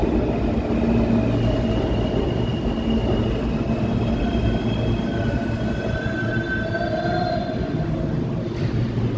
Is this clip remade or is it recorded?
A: recorded